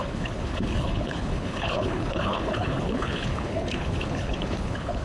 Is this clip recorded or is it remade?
remade